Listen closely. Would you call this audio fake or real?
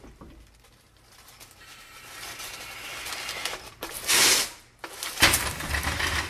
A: real